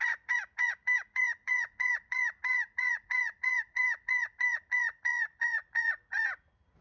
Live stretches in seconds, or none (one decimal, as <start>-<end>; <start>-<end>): none

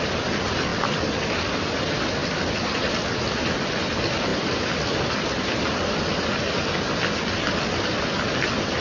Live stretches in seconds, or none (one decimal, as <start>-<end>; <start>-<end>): 0.0-0.7; 1.7-2.2; 3.1-4.3; 5.5-8.8

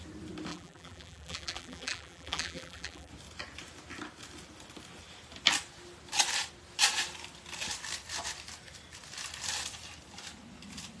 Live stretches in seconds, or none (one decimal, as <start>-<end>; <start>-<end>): 0.0-0.5; 3.1-11.0

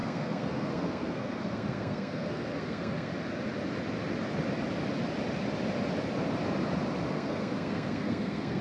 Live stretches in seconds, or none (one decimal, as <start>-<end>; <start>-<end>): 3.1-7.1